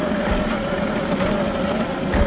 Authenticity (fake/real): real